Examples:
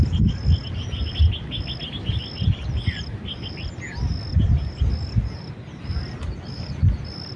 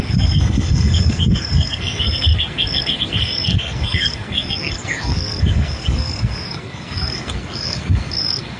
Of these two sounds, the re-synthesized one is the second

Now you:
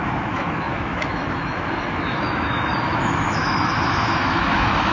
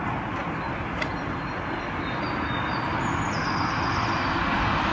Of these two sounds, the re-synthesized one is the first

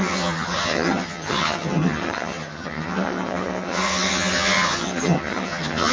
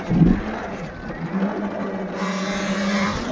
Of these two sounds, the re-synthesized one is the first